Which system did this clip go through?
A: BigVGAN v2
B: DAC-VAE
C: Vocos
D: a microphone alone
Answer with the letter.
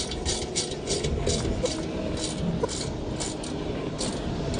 D